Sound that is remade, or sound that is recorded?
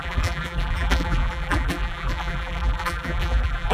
remade